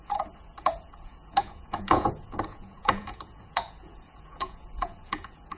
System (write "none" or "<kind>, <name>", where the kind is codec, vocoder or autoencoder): vocoder, Vocos